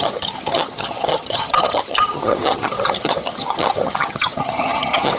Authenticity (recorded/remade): remade